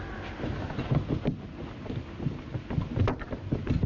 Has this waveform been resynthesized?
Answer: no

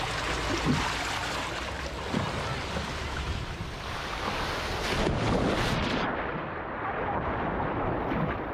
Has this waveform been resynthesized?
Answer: no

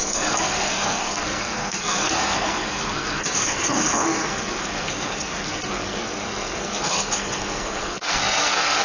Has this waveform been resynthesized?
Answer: yes